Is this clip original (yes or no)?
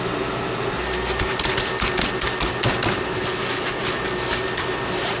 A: yes